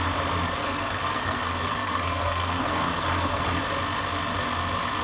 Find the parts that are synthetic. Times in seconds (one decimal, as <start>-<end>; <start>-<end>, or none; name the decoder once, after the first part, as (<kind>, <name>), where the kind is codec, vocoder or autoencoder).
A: 0.6-3.6 (codec, SNAC)